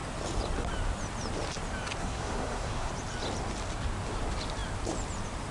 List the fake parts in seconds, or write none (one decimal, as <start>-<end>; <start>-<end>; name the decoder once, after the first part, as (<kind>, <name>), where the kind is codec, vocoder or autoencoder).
2.0-2.9 (codec, SNAC)